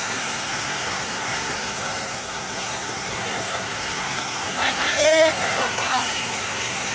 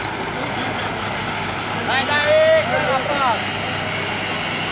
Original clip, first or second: second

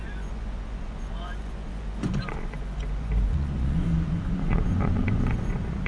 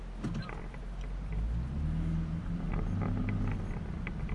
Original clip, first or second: second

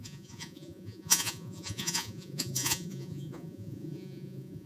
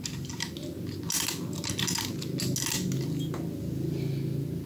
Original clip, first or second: second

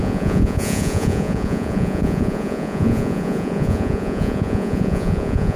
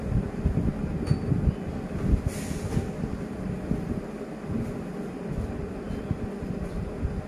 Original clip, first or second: second